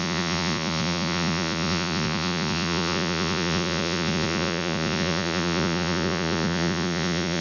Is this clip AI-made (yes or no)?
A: yes